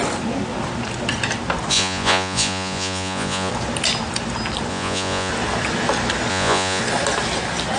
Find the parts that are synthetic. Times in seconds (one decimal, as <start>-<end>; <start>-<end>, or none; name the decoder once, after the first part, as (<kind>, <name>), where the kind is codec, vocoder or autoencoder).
1.7-3.5 (vocoder, Vocos); 4.7-5.3; 6.3-6.8